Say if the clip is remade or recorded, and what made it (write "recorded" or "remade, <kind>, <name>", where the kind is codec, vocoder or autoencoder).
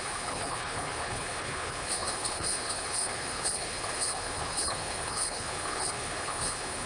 remade, codec, HILCodec